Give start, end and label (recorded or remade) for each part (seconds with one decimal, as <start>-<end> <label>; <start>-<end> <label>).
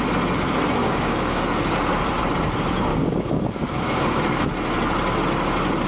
0.0-0.8 recorded; 0.8-1.4 remade; 1.4-2.9 recorded; 2.9-4.2 remade; 4.2-5.9 recorded